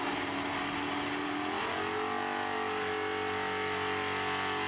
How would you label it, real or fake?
real